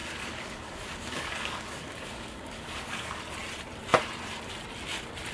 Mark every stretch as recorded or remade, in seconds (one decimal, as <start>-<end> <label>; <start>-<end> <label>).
0.0-3.2 remade; 3.2-5.3 recorded